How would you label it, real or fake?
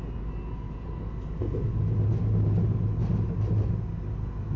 real